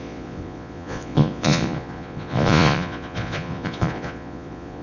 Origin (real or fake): fake